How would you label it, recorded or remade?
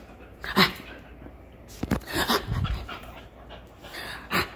remade